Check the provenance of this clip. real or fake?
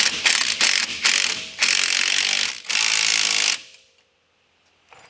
real